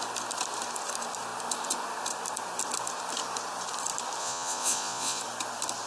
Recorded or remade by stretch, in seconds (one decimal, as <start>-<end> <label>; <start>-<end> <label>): 0.0-4.2 recorded; 4.2-5.2 remade; 5.2-5.9 recorded